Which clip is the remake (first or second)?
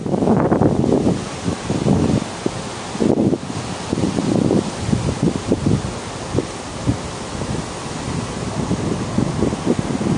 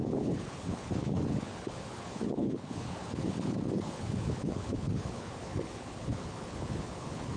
second